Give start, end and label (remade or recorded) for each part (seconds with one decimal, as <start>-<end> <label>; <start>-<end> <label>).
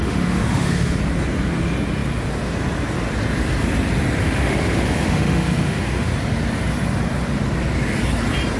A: 0.0-1.0 remade; 1.0-4.2 recorded; 4.2-6.1 remade; 6.1-8.6 recorded